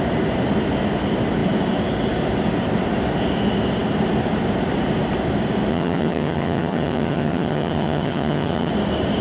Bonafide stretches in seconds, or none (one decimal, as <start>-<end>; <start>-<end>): 0.0-5.7; 8.7-9.2